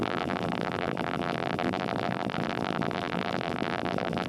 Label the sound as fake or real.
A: fake